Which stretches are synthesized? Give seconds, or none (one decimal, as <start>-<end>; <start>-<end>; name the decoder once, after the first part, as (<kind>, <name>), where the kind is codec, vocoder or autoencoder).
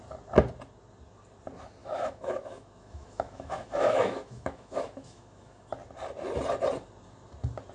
1.8-5.7 (autoencoder, DAC-VAE)